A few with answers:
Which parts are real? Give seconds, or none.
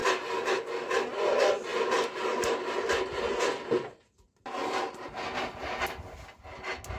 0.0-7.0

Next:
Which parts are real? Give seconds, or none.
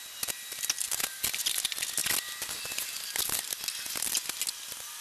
0.0-5.0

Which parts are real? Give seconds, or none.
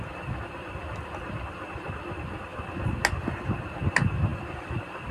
0.0-5.1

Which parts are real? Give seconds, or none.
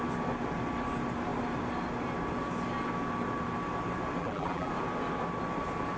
0.0-4.2; 4.7-6.0